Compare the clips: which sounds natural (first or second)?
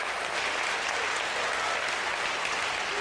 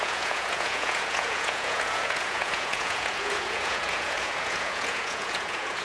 first